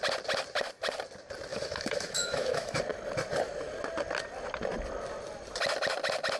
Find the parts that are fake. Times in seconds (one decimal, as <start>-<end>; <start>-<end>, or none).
1.5-2.8